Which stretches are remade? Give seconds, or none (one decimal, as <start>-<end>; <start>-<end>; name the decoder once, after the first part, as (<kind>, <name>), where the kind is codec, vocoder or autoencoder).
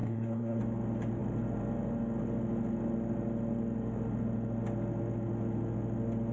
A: 0.0-0.6 (codec, SNAC)